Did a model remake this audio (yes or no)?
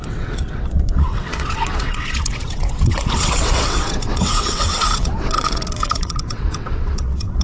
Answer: yes